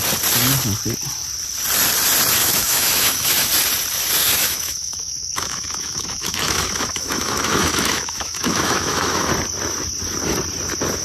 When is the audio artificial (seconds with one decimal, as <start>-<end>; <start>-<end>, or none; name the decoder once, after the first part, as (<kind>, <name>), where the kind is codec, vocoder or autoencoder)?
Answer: 2.4-3.5 (autoencoder, DAC-VAE); 4.2-9.3